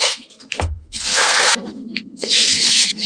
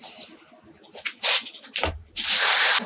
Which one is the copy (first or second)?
first